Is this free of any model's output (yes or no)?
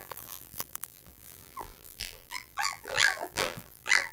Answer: no